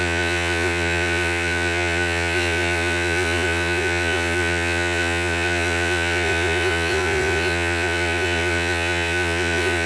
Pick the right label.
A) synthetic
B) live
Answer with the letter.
A